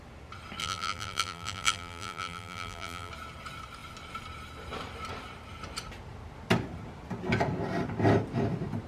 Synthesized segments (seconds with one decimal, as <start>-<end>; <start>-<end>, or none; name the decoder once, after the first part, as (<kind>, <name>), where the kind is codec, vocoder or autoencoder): 0.6-3.1 (vocoder, BigVGAN v2)